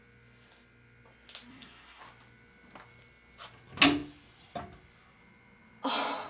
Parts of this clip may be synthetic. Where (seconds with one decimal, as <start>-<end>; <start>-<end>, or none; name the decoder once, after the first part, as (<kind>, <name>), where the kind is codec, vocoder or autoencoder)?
1.5-2.0 (codec, SNAC)